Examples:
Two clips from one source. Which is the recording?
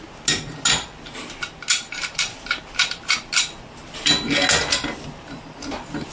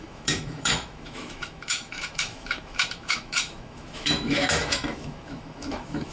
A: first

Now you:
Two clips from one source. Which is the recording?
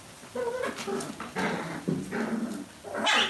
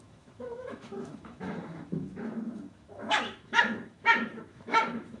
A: first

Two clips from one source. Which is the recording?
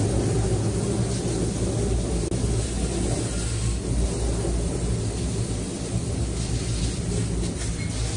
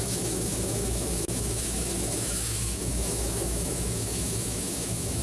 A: first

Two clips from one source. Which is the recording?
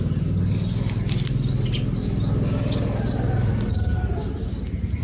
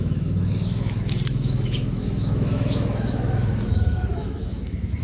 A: first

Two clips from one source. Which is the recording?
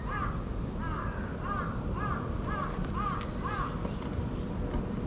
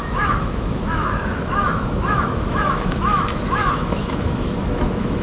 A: first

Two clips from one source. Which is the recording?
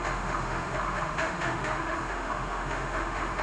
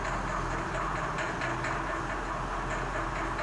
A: second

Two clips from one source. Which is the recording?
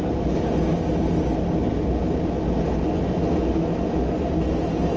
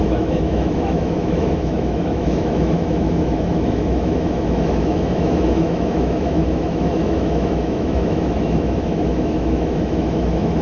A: first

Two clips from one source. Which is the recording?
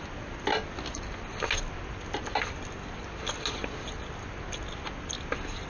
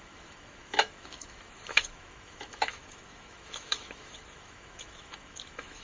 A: first